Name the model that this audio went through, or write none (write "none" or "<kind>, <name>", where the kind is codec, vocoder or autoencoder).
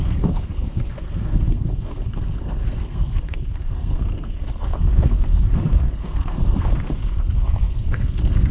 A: codec, SNAC